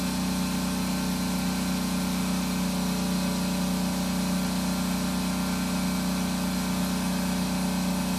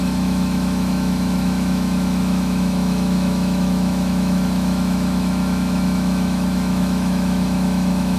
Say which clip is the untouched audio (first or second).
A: first